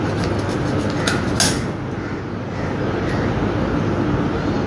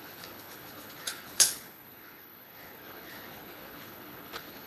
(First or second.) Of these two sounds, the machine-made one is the second